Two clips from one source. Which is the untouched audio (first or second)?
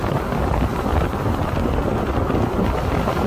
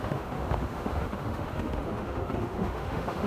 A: first